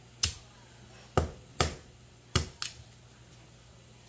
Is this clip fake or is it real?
real